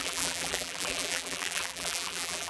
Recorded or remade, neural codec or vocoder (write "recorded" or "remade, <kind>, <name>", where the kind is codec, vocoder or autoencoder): remade, vocoder, BigVGAN v2